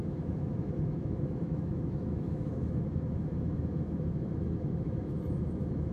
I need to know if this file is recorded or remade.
remade